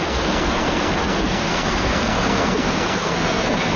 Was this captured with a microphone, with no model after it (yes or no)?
no